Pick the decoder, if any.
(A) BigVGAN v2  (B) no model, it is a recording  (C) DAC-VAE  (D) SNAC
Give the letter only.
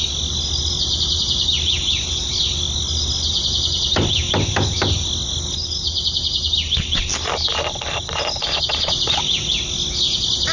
B